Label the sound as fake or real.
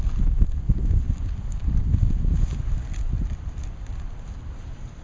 real